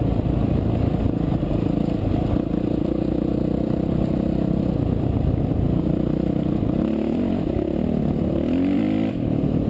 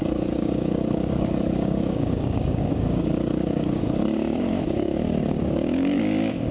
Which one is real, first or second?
first